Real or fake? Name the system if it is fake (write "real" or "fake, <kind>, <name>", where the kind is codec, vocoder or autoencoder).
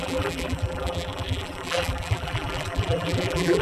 fake, vocoder, BigVGAN v2